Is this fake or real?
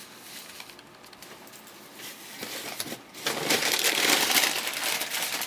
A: fake